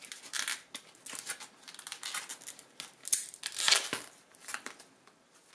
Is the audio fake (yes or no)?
no